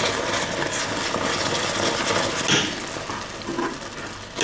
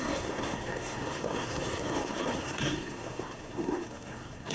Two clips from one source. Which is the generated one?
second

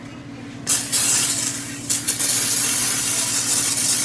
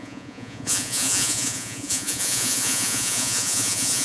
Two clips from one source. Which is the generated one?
second